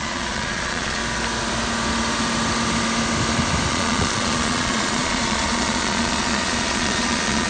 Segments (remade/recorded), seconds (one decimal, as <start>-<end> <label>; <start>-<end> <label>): 0.0-1.0 remade; 1.0-3.7 recorded; 3.7-7.5 remade